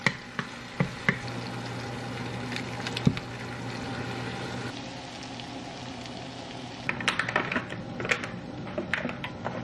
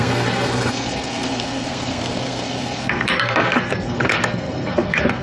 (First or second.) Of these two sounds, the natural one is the first